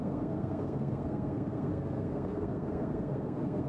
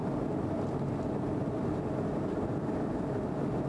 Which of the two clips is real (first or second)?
second